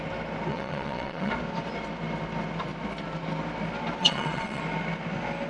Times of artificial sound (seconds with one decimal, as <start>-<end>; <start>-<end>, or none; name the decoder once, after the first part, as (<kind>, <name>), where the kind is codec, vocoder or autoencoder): 0.5-1.3 (vocoder, WaveNeXt); 4.0-4.6